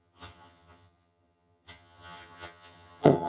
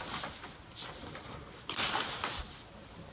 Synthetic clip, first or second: first